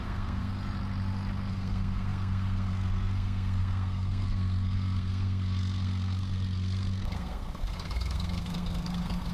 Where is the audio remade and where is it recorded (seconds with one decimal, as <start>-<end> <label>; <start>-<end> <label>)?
0.0-0.5 remade; 0.5-1.5 recorded; 1.5-9.3 remade